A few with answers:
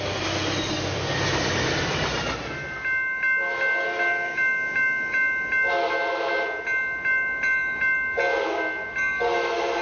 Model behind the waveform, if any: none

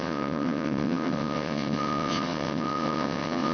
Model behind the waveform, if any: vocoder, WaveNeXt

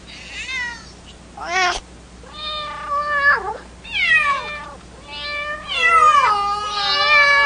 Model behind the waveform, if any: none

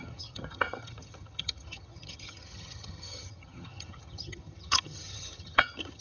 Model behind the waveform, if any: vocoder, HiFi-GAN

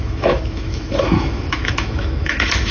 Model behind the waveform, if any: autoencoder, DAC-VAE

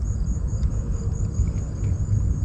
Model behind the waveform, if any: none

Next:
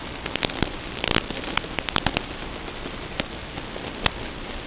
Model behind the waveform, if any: vocoder, BigVGAN v2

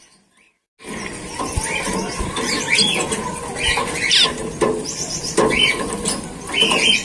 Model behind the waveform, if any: none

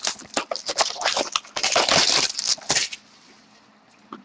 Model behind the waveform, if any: vocoder, BigVGAN v2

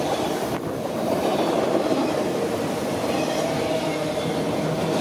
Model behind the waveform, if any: vocoder, BigVGAN v2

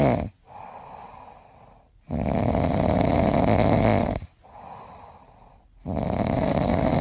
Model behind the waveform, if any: none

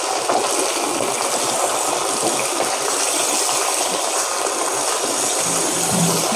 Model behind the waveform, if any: none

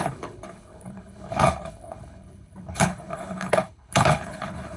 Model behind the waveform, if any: codec, HILCodec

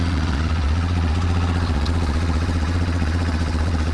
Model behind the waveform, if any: vocoder, Vocos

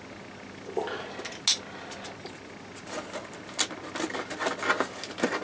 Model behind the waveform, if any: none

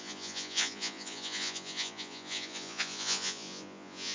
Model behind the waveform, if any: vocoder, Vocos